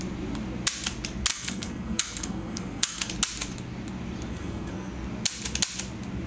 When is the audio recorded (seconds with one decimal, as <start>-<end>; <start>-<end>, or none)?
0.0-1.3; 3.1-4.3; 4.9-6.3